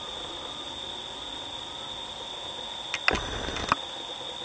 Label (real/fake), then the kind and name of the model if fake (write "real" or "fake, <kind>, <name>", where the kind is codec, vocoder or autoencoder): real